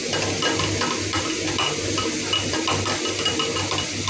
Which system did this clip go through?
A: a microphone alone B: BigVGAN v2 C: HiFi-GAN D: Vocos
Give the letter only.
A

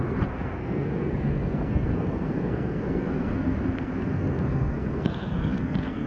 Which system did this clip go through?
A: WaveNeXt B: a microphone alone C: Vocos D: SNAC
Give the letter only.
D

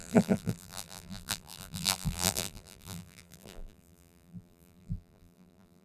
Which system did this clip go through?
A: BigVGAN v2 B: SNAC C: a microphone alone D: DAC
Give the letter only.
A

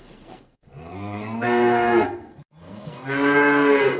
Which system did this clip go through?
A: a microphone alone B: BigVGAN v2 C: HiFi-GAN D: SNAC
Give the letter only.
D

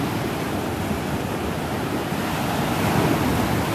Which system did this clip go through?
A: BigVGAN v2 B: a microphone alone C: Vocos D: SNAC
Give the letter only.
B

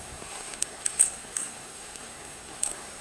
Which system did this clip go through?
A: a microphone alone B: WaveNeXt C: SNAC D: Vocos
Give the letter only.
C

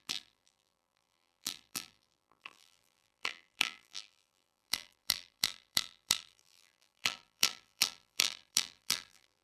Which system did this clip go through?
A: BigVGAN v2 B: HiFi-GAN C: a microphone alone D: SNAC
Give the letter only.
A